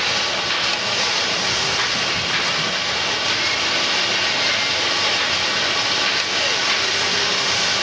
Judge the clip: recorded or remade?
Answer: recorded